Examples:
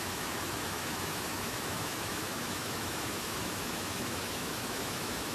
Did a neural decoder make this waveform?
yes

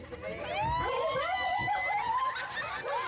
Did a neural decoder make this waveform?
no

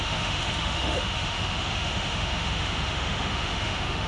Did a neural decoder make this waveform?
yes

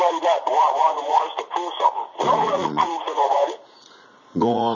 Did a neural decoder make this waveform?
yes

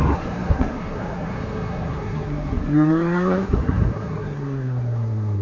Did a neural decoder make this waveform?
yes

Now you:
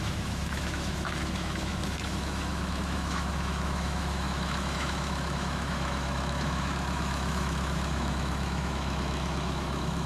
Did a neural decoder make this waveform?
yes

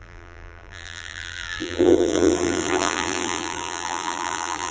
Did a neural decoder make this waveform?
yes